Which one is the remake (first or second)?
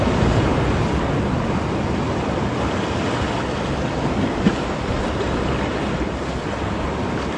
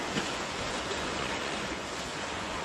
second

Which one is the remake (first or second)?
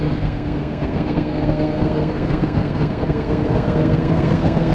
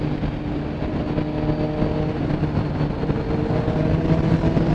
first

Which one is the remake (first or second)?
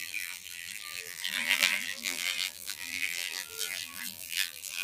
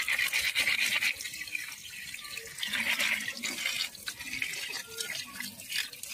first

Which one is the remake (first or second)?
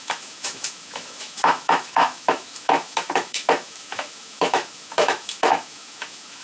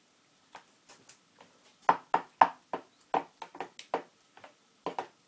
first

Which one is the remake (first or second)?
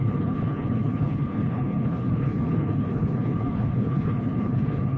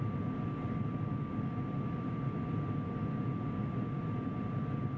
first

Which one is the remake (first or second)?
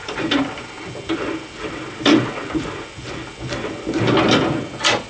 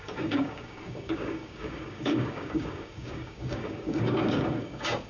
second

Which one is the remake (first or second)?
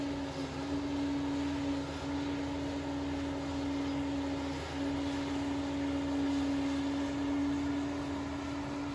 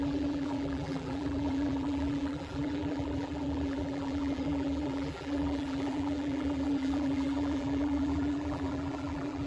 second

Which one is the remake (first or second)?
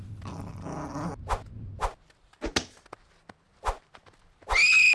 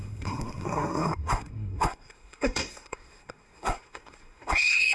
second